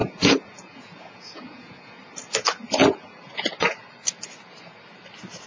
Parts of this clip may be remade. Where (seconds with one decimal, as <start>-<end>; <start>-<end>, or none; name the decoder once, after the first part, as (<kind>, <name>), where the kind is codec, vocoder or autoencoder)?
0.0-2.0 (vocoder, Vocos); 2.8-3.3